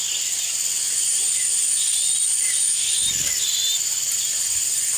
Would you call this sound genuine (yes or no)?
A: yes